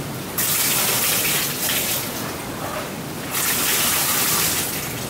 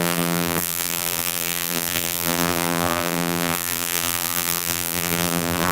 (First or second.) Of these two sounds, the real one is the first